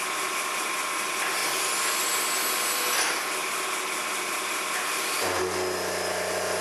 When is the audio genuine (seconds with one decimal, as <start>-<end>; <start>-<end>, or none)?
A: 0.0-3.4; 5.4-6.6